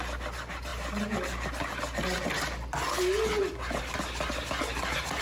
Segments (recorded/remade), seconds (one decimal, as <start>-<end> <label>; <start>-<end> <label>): 0.0-5.2 recorded